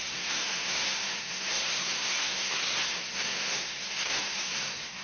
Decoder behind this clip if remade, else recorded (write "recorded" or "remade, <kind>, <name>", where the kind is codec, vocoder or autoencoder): remade, codec, SNAC